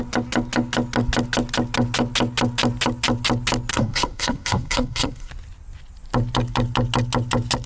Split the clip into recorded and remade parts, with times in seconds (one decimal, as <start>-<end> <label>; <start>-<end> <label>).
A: 0.0-3.7 recorded; 3.7-5.3 remade; 5.3-7.7 recorded